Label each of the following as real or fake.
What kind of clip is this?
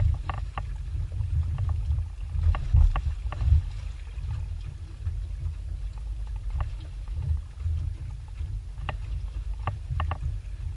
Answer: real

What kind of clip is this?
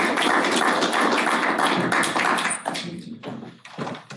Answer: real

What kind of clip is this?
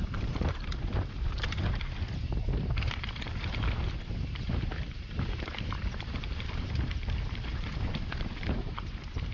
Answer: fake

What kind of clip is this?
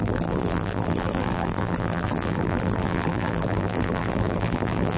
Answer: fake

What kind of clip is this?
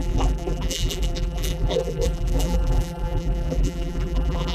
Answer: fake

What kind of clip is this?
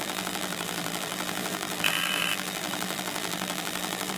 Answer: fake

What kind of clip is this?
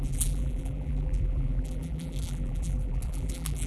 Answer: fake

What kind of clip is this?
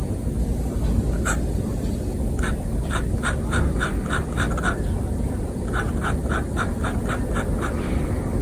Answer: real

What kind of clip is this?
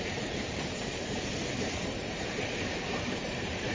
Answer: fake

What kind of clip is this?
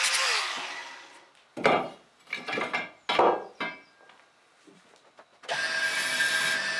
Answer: real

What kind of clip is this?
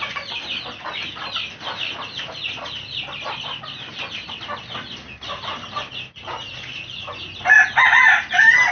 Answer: real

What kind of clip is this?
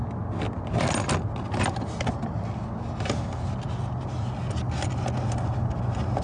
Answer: real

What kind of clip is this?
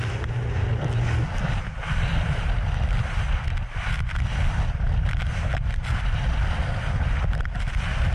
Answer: real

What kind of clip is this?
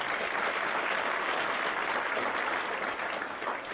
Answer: real